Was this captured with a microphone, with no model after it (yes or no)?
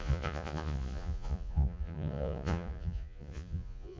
no